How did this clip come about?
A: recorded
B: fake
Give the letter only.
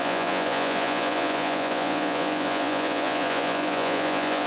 B